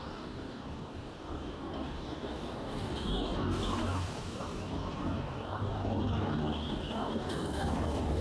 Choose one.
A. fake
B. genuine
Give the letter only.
A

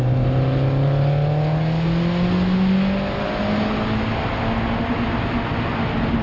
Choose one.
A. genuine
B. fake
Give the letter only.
A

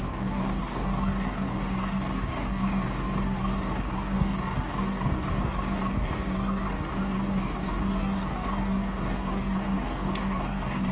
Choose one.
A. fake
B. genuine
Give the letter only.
A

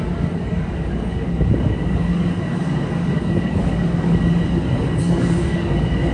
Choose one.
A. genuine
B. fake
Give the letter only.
B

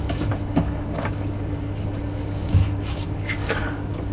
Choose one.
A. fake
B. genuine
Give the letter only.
A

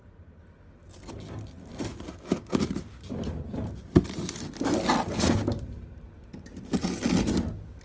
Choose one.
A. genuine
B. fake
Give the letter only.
A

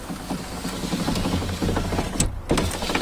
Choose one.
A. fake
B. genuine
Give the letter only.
B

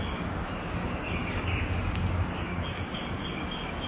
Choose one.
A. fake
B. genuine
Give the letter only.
A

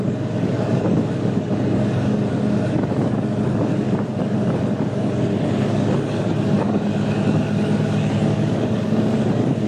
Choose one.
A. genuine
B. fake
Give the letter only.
B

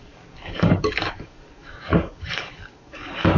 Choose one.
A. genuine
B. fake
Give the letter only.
B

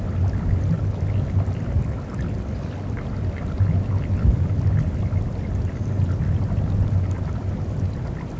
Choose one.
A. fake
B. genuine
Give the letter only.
B